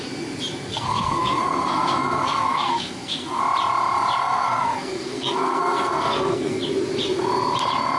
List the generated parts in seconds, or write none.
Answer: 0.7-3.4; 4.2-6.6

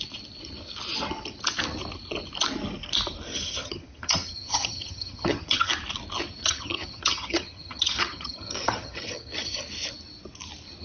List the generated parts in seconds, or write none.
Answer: 3.3-5.7; 6.4-9.6

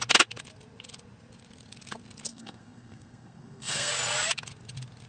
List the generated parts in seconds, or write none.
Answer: 2.3-3.9

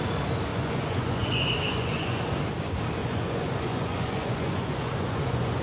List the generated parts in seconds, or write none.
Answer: 0.5-2.2; 3.0-5.6